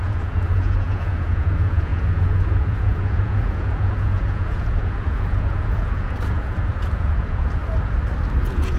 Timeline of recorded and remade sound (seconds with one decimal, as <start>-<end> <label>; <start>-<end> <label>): 0.0-7.6 remade; 7.6-8.4 recorded; 8.4-8.8 remade